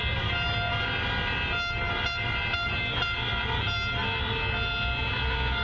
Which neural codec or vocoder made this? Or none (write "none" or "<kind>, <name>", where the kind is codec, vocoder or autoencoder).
none